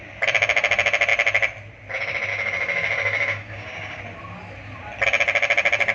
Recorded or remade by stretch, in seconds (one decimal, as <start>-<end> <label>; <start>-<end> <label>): 0.0-2.3 recorded; 2.3-4.0 remade; 4.0-5.9 recorded